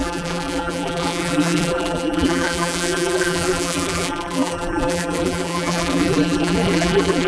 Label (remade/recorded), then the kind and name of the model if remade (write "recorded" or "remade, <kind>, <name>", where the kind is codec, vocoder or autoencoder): remade, vocoder, BigVGAN v2